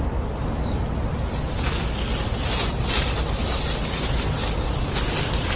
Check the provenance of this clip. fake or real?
real